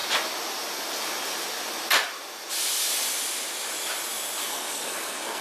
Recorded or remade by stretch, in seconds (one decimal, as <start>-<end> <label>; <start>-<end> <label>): 0.0-4.4 recorded; 4.4-5.4 remade